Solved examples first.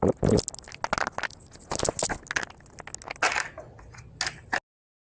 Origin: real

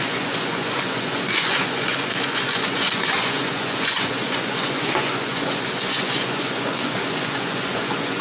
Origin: fake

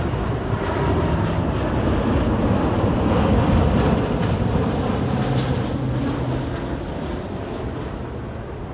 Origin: real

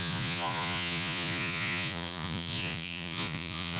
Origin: fake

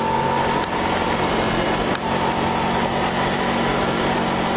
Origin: real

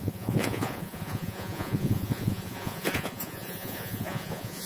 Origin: fake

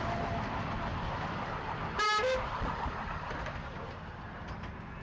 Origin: real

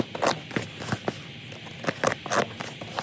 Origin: real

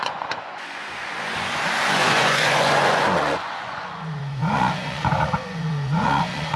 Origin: fake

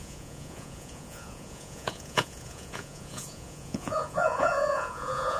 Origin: fake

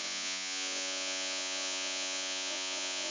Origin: fake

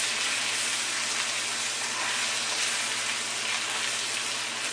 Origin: real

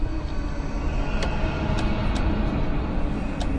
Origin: real